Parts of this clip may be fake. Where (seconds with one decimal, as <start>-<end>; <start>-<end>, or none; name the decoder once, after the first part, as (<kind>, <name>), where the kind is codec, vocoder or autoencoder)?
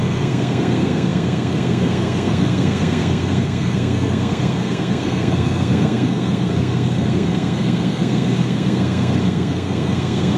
0.0-10.4 (codec, SNAC)